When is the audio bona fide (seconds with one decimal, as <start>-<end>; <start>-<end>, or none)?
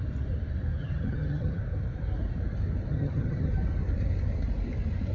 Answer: 0.0-0.8; 1.6-2.9; 3.5-5.1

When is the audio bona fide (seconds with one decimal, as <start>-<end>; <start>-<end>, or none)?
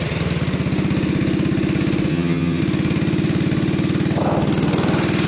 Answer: 0.0-2.1; 2.6-5.3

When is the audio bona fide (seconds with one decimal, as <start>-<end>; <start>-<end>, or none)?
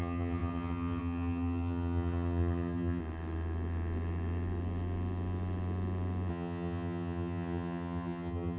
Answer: 3.0-6.3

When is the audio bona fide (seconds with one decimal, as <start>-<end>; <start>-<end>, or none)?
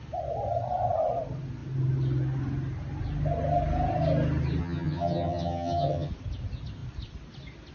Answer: 0.0-4.6; 6.1-7.7